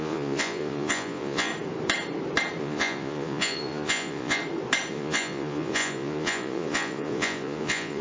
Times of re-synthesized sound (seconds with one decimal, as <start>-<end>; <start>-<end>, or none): 0.0-1.5; 2.6-4.4; 4.9-8.0